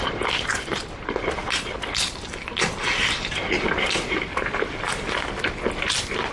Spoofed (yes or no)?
no